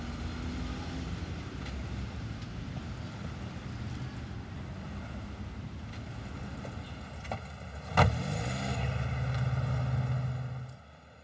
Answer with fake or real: real